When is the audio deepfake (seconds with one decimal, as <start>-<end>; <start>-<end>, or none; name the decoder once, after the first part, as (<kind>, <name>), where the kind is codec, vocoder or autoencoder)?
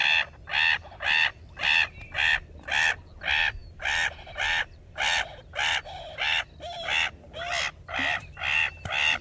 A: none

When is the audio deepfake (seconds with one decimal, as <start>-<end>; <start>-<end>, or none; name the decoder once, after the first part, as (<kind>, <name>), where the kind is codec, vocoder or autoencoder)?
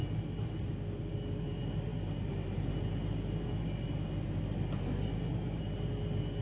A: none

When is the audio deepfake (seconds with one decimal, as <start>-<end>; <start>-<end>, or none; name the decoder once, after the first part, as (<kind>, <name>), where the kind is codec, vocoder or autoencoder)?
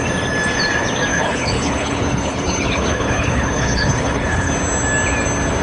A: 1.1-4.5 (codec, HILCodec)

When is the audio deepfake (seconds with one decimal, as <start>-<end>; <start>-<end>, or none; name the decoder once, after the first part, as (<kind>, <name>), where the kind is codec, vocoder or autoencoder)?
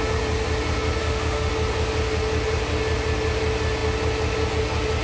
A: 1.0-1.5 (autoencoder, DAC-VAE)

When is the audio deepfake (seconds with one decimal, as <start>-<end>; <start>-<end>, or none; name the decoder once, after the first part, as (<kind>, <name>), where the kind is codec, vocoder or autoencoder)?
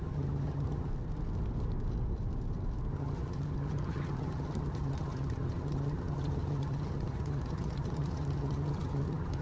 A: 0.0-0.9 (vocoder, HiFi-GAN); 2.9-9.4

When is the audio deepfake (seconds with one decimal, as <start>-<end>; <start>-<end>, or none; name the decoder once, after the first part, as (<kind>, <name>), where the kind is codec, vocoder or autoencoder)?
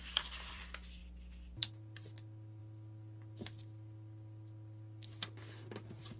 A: 0.0-1.0 (vocoder, BigVGAN v2); 1.6-2.6; 5.7-6.2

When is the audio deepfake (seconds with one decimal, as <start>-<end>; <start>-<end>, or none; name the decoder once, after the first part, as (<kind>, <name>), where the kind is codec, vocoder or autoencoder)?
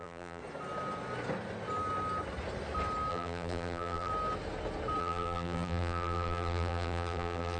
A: 0.0-0.4 (vocoder, BigVGAN v2); 3.1-4.1; 5.0-7.6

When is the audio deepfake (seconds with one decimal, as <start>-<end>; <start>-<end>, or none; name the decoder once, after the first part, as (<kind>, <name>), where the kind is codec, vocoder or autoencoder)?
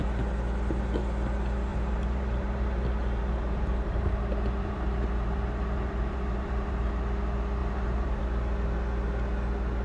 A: 1.7-6.9 (vocoder, BigVGAN v2); 7.6-8.2